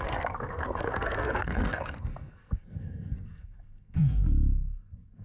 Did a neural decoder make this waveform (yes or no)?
yes